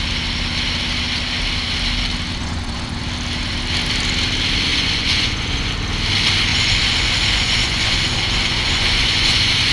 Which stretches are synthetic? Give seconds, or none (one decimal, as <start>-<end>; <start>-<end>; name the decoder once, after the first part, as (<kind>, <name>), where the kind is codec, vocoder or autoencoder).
2.4-3.0 (vocoder, Vocos); 4.7-5.7; 6.5-9.7